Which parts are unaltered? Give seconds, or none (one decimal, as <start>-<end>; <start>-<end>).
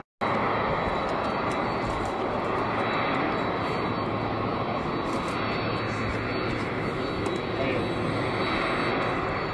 0.0-9.5